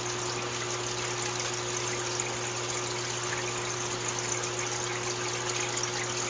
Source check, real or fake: real